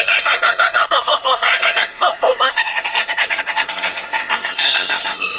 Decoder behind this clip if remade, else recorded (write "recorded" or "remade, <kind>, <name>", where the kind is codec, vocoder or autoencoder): remade, codec, SNAC